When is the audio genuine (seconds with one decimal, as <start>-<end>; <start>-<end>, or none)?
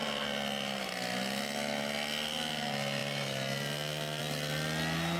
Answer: 0.0-5.2